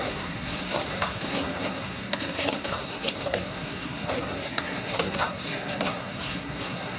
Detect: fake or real fake